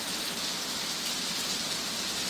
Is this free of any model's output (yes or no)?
no